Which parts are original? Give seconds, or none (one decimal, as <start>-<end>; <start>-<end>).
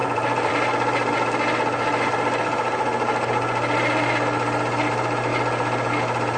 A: 0.5-6.4